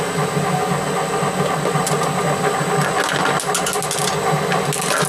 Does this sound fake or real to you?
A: real